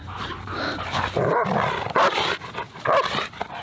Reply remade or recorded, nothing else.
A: remade